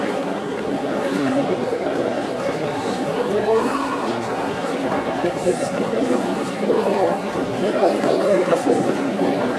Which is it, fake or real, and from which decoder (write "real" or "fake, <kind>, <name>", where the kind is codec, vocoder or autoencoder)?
fake, codec, SNAC